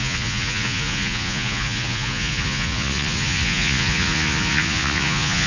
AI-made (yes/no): yes